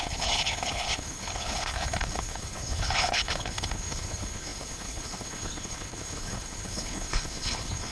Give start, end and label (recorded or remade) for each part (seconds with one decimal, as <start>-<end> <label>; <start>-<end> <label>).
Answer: 0.0-7.9 remade